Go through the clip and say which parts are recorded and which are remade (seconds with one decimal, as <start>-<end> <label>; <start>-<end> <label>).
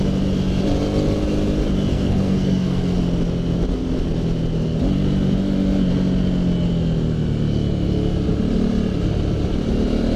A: 0.0-1.9 recorded; 1.9-3.0 remade; 3.0-10.2 recorded